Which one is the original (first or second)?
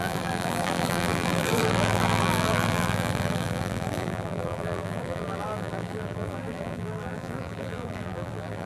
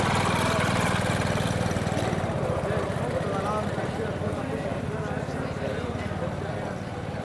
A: second